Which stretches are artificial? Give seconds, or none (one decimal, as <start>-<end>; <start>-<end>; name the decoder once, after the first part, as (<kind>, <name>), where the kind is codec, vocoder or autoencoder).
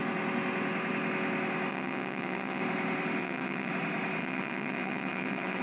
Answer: 1.7-2.6 (vocoder, WaveNeXt); 3.2-3.7; 4.2-5.6